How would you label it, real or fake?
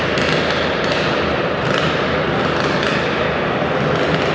real